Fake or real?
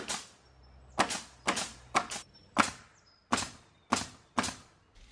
real